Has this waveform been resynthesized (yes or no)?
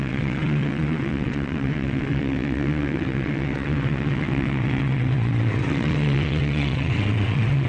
yes